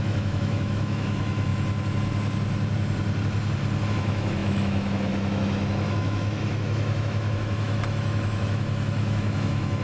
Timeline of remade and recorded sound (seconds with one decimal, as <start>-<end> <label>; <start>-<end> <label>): 0.0-1.5 remade; 1.5-3.9 recorded; 3.9-9.8 remade